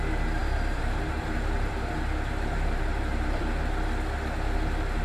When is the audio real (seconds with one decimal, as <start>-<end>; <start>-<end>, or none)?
0.0-0.4; 3.4-5.0

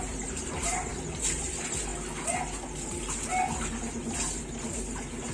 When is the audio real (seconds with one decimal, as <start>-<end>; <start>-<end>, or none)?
0.0-5.3

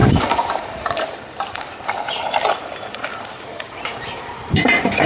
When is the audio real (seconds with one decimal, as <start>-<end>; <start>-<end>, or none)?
none

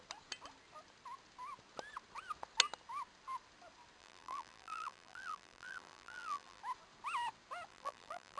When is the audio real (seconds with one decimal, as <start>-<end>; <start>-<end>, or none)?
0.0-4.0; 6.6-7.7

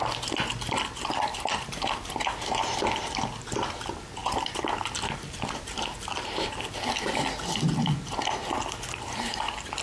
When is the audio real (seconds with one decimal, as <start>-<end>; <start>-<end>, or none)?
0.0-1.3; 2.8-9.8

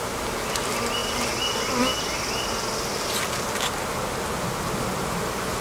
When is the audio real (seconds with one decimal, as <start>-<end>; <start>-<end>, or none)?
0.0-5.6

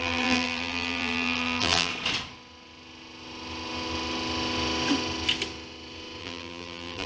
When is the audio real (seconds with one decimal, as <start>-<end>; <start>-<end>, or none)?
1.9-6.2

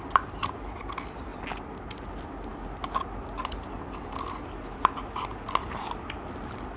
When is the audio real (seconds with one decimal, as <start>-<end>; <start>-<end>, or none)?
0.0-6.8